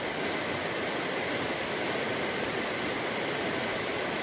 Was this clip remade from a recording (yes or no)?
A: yes